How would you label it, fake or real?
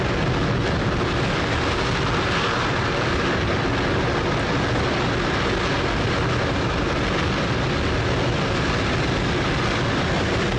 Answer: real